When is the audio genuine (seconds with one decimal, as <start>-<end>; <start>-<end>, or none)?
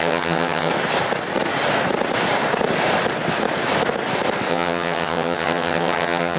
0.7-4.5